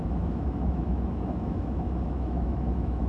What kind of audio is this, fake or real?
fake